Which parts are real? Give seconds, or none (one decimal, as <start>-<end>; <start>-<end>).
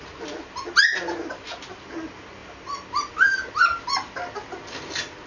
0.0-5.3